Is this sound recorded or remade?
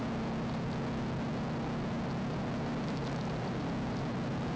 remade